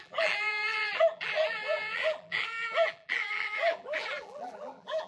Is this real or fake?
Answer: fake